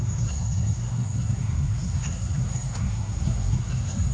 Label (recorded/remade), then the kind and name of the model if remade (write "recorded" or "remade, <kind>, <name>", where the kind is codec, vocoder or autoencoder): remade, codec, SNAC